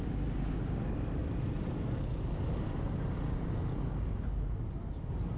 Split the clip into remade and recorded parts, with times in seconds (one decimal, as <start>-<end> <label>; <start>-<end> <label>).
0.0-1.2 recorded; 1.2-2.0 remade; 2.0-5.4 recorded